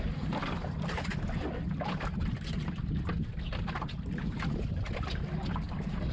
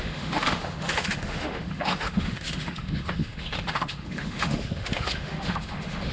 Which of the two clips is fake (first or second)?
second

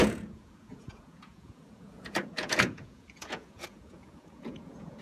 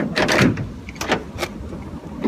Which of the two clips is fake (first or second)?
first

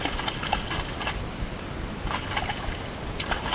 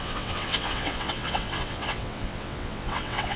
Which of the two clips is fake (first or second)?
second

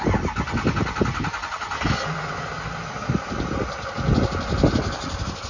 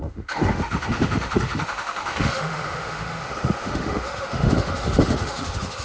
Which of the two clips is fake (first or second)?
second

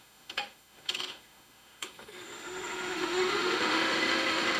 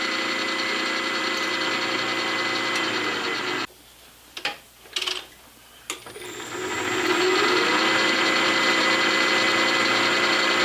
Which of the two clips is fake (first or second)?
first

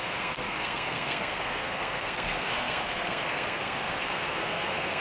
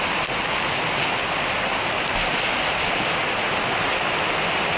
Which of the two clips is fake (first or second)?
first